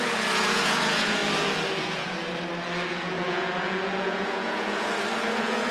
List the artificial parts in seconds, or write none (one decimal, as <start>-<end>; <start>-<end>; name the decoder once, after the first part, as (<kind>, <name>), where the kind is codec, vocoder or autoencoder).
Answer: 0.0-1.2 (vocoder, Vocos); 1.8-2.2; 2.9-5.7